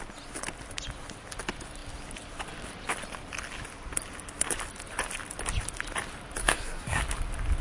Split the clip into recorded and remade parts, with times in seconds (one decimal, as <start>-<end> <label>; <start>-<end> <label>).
0.0-6.4 recorded; 6.4-7.0 remade; 7.0-7.6 recorded